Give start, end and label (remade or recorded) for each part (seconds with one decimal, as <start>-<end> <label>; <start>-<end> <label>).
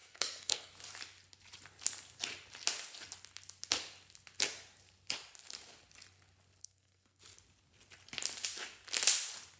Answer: 0.0-0.7 remade; 0.7-6.6 recorded; 6.6-7.2 remade; 7.2-9.6 recorded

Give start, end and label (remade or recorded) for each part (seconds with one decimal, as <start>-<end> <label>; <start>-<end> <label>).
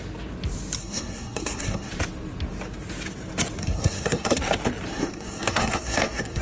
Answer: 0.0-0.8 recorded; 0.8-1.9 remade; 1.9-3.6 recorded; 3.6-4.4 remade; 4.4-4.9 recorded; 4.9-6.4 remade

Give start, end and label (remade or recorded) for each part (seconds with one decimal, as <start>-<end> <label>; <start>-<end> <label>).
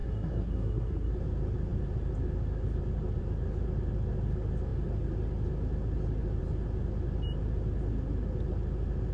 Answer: 0.0-1.1 remade; 1.1-9.1 recorded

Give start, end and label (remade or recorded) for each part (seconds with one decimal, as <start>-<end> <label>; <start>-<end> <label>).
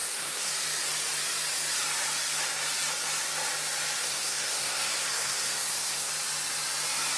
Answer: 0.0-0.5 remade; 0.5-4.0 recorded; 4.0-6.1 remade; 6.1-7.2 recorded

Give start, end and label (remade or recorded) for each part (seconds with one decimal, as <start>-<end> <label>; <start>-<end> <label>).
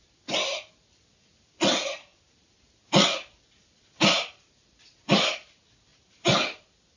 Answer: 0.0-7.0 recorded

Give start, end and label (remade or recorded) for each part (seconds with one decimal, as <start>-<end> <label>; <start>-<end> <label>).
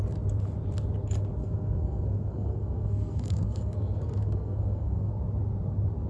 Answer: 0.0-1.4 recorded; 1.4-5.1 remade; 5.1-6.1 recorded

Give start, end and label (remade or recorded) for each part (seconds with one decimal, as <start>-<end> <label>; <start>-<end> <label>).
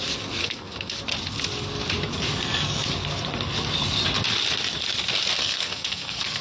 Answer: 0.0-0.4 recorded; 0.4-1.0 remade; 1.0-5.4 recorded; 5.4-6.4 remade